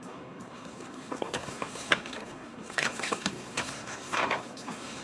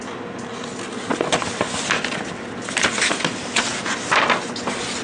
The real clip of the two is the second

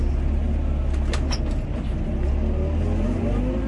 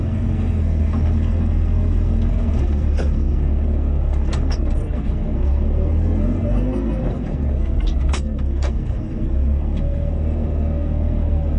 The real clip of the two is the first